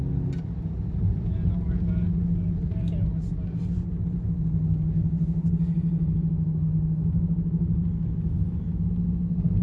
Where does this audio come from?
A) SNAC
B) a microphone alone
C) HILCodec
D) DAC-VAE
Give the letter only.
B